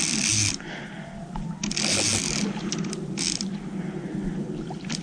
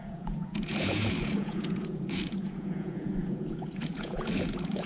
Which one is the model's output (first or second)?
second